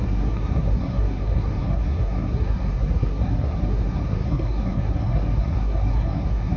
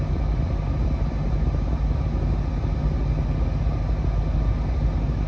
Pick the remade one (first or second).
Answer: first